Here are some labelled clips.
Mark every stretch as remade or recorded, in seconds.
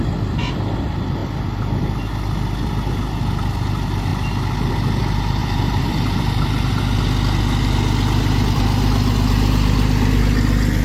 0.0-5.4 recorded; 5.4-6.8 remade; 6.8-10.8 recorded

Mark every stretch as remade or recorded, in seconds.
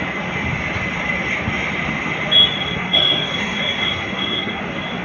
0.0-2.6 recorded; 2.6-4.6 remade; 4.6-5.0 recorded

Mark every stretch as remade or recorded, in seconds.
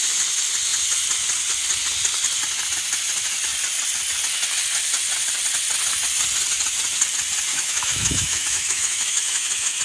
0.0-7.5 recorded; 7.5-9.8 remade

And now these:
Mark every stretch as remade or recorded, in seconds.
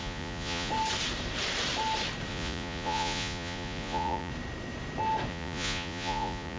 0.0-0.7 remade; 0.7-2.3 recorded; 2.3-4.3 remade; 4.3-5.3 recorded; 5.3-6.6 remade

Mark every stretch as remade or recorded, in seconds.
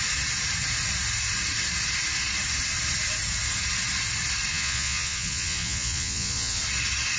0.0-4.5 recorded; 4.5-6.6 remade; 6.6-7.2 recorded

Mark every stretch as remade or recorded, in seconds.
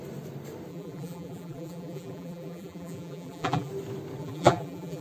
0.0-0.7 recorded; 0.7-3.7 remade; 3.7-4.2 recorded; 4.2-5.0 remade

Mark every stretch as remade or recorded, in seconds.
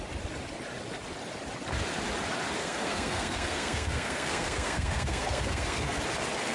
0.0-2.6 recorded; 2.6-6.0 remade; 6.0-6.5 recorded